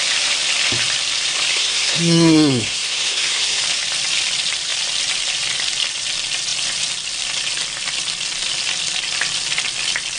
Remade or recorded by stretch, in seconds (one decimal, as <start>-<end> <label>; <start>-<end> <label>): 0.0-1.5 recorded; 1.5-3.6 remade; 3.6-10.2 recorded

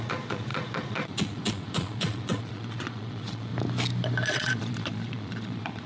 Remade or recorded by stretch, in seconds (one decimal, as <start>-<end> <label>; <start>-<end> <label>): 0.0-3.5 remade; 3.5-4.3 recorded; 4.3-5.9 remade

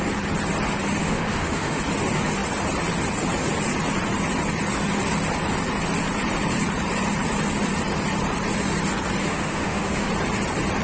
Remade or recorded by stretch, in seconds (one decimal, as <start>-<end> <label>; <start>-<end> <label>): 0.0-1.0 recorded; 1.0-1.8 remade; 1.8-9.2 recorded; 9.2-10.1 remade; 10.1-10.8 recorded

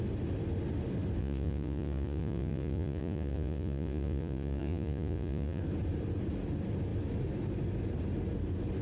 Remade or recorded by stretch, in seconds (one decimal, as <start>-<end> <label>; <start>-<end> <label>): 0.0-1.2 recorded; 1.2-5.6 remade; 5.6-8.8 recorded

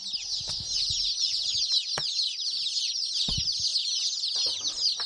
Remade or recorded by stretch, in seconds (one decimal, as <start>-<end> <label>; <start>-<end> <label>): 0.0-5.1 recorded

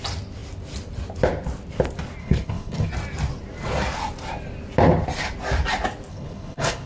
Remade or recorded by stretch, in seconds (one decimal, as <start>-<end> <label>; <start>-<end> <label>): 0.0-2.2 recorded; 2.2-2.9 remade; 2.9-6.1 recorded; 6.1-6.9 remade

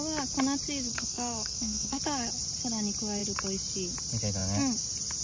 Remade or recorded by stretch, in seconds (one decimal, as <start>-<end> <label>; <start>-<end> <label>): 0.0-0.9 recorded; 0.9-2.0 remade; 2.0-5.2 recorded

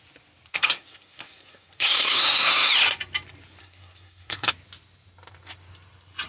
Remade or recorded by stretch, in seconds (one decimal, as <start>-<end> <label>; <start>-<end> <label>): 0.0-0.5 recorded; 0.5-2.7 remade; 2.7-3.6 recorded; 3.6-4.5 remade; 4.5-6.3 recorded